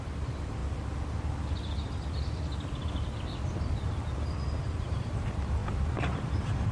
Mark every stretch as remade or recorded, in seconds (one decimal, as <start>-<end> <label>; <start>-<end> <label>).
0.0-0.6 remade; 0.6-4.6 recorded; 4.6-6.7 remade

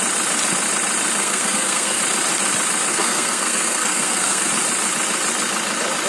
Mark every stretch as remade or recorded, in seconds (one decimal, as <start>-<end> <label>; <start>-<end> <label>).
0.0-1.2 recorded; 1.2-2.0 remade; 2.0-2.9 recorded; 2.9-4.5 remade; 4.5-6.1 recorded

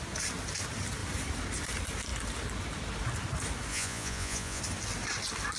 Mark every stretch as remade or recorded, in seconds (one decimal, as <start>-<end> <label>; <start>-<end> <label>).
0.0-3.7 recorded; 3.7-4.6 remade; 4.6-5.6 recorded

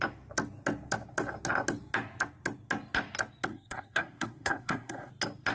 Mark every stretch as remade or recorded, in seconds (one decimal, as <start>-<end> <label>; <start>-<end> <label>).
0.0-3.5 recorded; 3.5-5.1 remade; 5.1-5.5 recorded